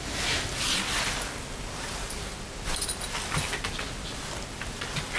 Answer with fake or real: real